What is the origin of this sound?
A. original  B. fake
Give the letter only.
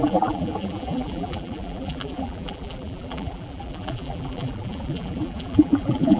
B